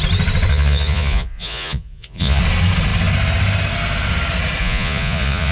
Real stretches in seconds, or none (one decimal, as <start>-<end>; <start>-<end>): 0.0-0.5; 2.4-4.6